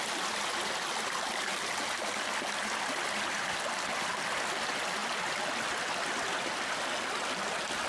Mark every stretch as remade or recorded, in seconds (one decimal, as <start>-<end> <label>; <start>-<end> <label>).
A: 0.0-7.9 recorded